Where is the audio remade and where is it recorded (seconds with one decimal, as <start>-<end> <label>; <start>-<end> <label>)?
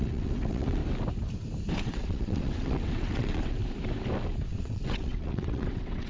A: 0.0-0.8 remade; 0.8-1.8 recorded; 1.8-3.6 remade; 3.6-4.5 recorded; 4.5-6.1 remade